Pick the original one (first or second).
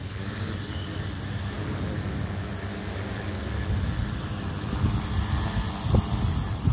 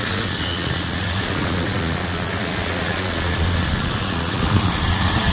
first